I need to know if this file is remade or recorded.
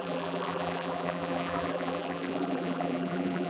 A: remade